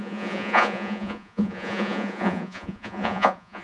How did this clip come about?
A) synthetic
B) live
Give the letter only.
A